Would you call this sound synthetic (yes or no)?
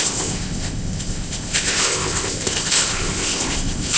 yes